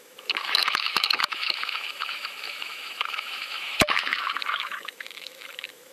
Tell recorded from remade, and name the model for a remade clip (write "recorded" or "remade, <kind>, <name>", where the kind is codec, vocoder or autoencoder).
remade, autoencoder, DAC-VAE